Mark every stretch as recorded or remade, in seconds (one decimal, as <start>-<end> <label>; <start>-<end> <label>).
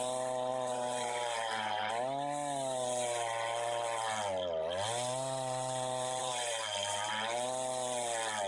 0.0-0.5 recorded; 0.5-1.9 remade; 1.9-6.2 recorded; 6.2-7.1 remade; 7.1-8.5 recorded